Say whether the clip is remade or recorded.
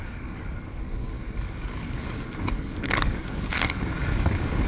remade